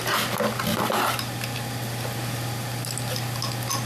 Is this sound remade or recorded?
recorded